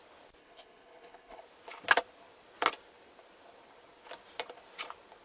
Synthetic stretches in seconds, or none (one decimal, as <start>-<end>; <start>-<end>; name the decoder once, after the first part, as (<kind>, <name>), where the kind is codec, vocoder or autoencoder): 0.4-1.4 (codec, HILCodec)